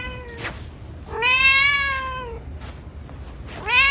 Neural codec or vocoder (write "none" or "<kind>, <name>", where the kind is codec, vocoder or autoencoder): none